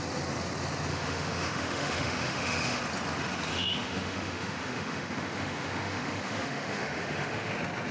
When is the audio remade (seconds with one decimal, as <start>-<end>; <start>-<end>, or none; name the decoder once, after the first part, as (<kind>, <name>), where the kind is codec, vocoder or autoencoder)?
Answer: 0.9-2.8 (autoencoder, DAC-VAE); 3.5-7.5